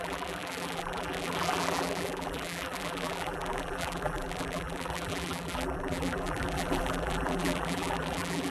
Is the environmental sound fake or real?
fake